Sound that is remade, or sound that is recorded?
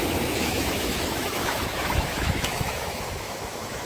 remade